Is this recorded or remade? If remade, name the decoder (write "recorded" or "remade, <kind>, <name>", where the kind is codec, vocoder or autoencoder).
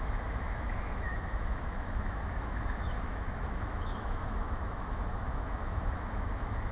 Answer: remade, autoencoder, DAC-VAE